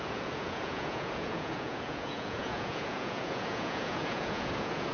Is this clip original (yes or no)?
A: no